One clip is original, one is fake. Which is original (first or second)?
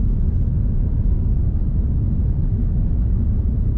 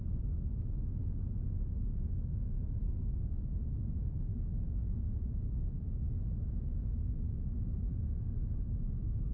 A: first